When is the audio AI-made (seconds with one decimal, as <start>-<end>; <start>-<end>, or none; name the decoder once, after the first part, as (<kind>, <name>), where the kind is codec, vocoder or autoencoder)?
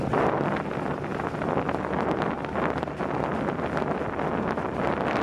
none